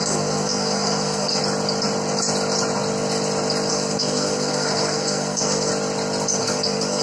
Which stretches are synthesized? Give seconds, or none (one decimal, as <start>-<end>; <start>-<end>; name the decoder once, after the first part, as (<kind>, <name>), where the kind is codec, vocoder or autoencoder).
0.0-1.4 (codec, SNAC); 3.7-5.7; 6.4-7.0